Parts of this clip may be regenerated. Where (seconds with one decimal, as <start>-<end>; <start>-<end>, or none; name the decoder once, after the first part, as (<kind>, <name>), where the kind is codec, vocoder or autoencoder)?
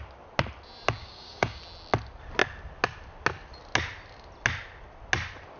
1.0-1.6 (codec, DAC)